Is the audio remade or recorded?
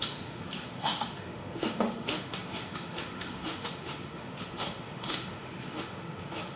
remade